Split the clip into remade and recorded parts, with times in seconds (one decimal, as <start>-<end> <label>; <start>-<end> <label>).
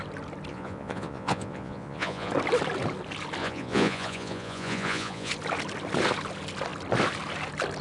0.0-0.5 recorded; 0.5-2.3 remade; 2.3-3.4 recorded; 3.4-5.3 remade; 5.3-7.8 recorded